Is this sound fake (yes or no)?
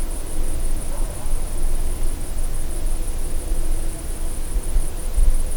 no